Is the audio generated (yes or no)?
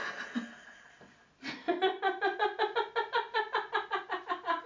no